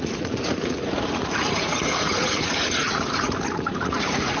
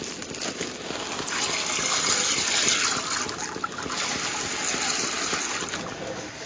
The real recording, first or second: second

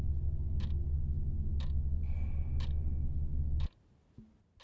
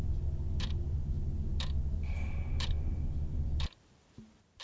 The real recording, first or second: first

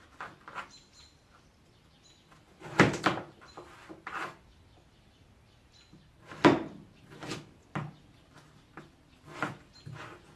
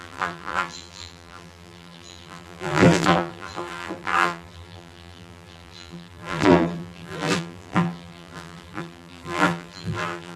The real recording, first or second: first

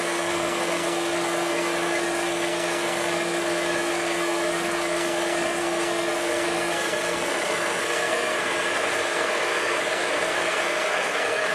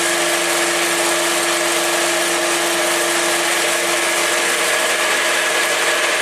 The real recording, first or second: second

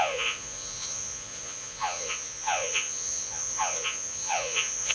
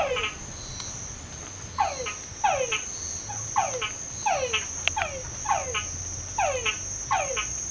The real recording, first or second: second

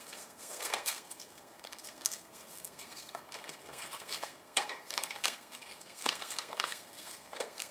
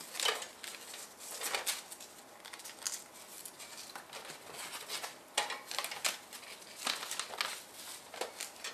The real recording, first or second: second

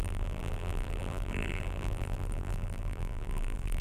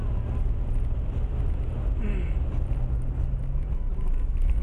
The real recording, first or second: second